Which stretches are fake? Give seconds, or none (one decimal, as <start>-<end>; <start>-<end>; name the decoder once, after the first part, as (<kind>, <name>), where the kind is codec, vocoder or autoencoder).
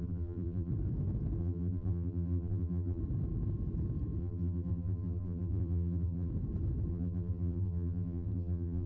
0.0-0.7 (vocoder, BigVGAN v2); 1.4-3.0; 4.2-6.3; 6.9-8.9